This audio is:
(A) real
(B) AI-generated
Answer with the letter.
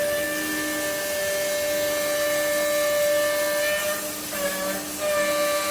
A